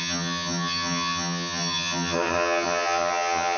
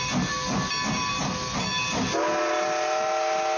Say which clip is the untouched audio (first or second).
second